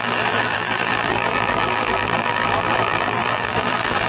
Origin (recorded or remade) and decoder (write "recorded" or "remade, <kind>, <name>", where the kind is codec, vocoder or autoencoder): remade, vocoder, BigVGAN v2